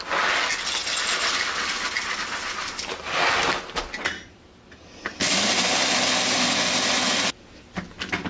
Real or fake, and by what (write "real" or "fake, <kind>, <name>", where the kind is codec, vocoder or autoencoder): real